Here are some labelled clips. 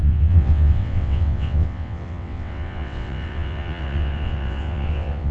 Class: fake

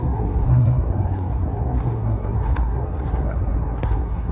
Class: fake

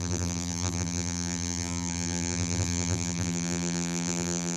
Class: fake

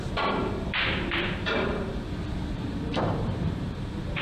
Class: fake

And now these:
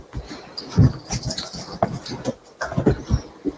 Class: real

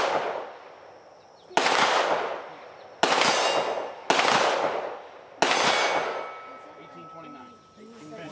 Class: real